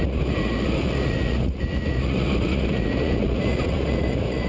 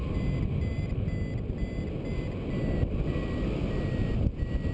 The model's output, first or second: first